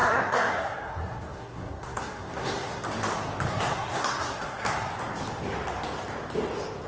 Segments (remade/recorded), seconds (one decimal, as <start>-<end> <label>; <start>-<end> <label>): 0.0-2.8 remade; 2.8-3.5 recorded; 3.5-4.9 remade; 4.9-6.9 recorded